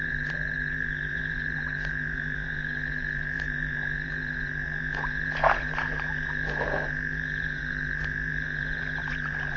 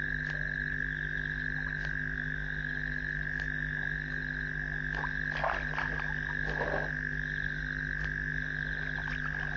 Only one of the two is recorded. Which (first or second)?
second